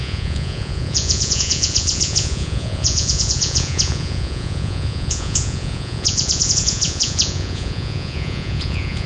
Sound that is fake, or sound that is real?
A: fake